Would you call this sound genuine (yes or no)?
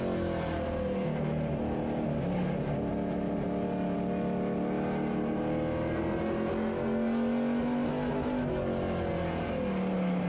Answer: yes